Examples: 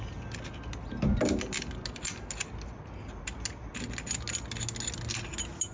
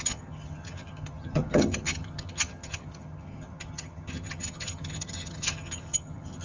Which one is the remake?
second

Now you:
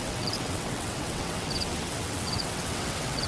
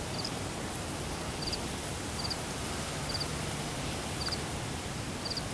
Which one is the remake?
first